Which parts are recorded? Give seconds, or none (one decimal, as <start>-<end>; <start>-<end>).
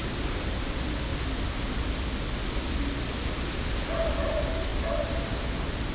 0.0-5.9